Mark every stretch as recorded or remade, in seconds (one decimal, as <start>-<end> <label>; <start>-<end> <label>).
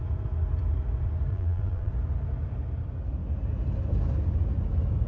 0.0-1.3 recorded; 1.3-1.9 remade; 1.9-5.1 recorded